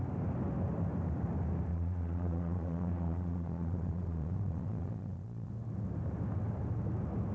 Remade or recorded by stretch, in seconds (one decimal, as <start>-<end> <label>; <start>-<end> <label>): 0.0-1.7 recorded; 1.7-5.5 remade; 5.5-7.3 recorded